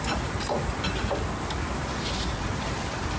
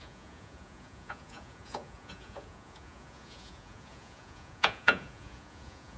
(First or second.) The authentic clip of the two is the first